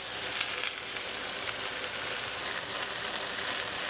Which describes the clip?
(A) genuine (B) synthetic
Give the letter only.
A